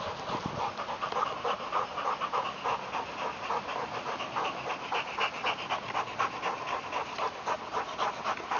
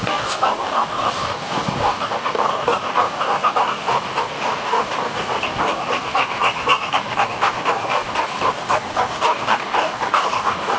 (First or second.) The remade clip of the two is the second